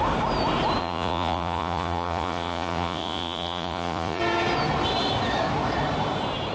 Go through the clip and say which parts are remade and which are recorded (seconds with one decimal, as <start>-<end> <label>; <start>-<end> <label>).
0.0-0.8 recorded; 0.8-4.2 remade; 4.2-6.5 recorded